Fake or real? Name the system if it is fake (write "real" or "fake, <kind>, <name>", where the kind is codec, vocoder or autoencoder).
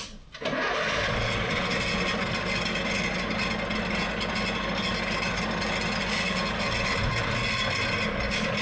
real